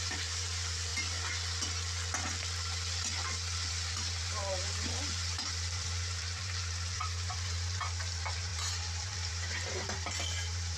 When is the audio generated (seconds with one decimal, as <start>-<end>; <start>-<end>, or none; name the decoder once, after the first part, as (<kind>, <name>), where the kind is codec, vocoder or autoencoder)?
0.0-0.9 (vocoder, BigVGAN v2); 3.7-10.8